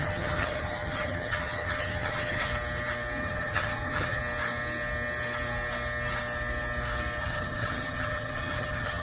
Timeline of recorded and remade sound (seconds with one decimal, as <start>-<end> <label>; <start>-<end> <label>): 0.0-2.5 remade; 2.5-3.2 recorded; 3.2-4.2 remade; 4.2-7.2 recorded; 7.2-9.0 remade